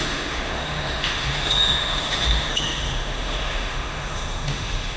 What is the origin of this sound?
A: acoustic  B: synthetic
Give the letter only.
B